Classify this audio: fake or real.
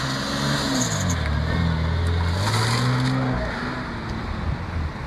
real